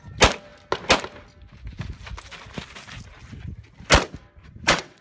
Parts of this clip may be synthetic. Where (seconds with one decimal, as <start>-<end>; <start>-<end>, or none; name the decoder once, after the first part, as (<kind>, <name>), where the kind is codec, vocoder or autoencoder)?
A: 4.4-5.0 (vocoder, WaveNeXt)